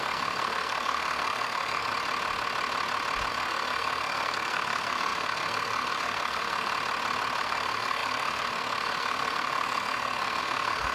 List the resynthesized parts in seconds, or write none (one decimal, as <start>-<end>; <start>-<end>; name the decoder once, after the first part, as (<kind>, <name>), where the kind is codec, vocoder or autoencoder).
0.0-1.9 (codec, SNAC); 3.3-6.7; 7.4-10.9

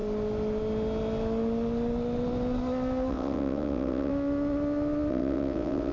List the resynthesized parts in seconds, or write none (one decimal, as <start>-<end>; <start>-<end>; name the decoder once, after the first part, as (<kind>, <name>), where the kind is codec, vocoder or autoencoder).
3.1-4.1 (vocoder, WaveNeXt); 5.1-5.9